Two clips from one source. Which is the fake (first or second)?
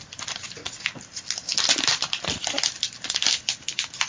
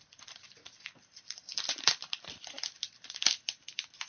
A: second